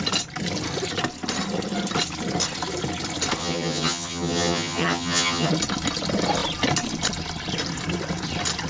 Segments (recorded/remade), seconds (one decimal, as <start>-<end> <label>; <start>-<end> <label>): 0.0-3.4 recorded; 3.4-5.5 remade; 5.5-8.7 recorded